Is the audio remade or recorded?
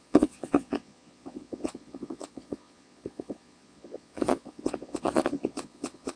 remade